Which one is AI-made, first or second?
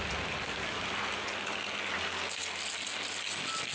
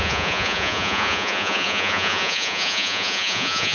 second